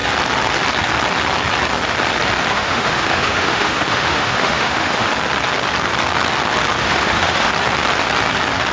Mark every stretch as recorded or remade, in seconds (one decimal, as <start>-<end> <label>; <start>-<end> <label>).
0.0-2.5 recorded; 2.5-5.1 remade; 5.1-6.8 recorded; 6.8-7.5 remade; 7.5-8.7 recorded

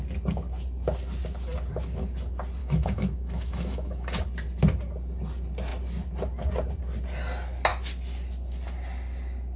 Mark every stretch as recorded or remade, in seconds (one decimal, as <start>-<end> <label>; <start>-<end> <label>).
0.0-2.6 recorded; 2.6-4.2 remade; 4.2-9.6 recorded

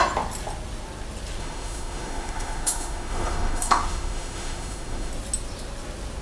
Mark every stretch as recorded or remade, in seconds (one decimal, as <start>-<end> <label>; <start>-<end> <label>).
0.0-1.4 recorded; 1.4-5.1 remade; 5.1-6.2 recorded

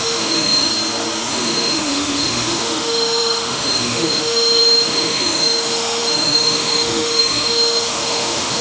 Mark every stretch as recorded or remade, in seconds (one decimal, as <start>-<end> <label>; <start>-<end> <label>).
0.0-0.7 remade; 0.7-1.3 recorded; 1.3-8.6 remade

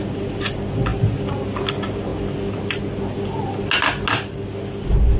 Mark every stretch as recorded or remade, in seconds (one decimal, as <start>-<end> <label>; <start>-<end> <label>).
0.0-5.2 recorded